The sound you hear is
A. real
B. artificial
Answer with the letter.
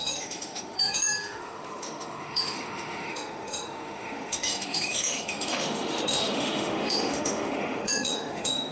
B